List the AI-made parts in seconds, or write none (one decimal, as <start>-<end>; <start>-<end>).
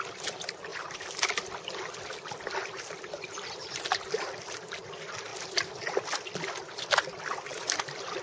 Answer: 0.0-5.3; 6.0-8.2